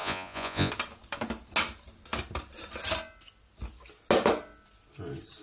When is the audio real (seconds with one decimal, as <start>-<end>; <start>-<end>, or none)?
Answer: 0.7-5.4